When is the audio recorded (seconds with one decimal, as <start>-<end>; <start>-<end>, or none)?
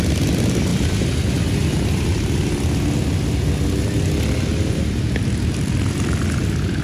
none